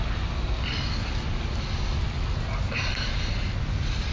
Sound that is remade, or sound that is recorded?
recorded